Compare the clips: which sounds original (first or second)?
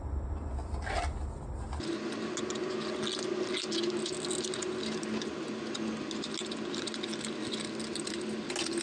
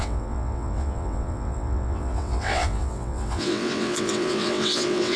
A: first